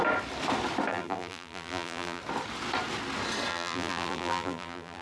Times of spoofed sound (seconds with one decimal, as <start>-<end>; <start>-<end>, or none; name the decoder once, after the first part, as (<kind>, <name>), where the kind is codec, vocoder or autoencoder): 0.9-2.2 (vocoder, BigVGAN v2); 3.5-5.0